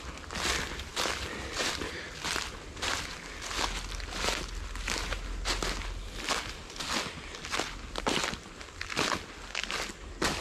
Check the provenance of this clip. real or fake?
real